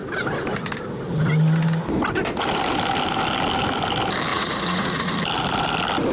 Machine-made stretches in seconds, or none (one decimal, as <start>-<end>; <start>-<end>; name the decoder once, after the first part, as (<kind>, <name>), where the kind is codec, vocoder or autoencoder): 4.3-5.1 (vocoder, Vocos)

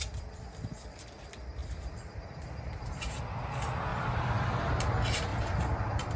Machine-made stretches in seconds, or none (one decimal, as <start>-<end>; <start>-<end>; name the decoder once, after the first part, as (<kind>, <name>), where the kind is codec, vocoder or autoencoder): 1.6-3.2 (vocoder, BigVGAN v2); 3.9-4.7; 5.3-6.2

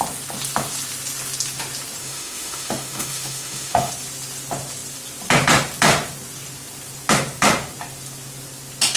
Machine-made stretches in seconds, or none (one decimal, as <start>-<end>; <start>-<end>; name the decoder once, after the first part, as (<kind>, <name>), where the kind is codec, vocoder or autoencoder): 2.0-3.9 (autoencoder, DAC-VAE)